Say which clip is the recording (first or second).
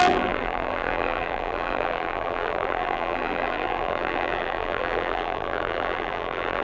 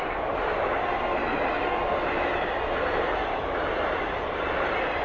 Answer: second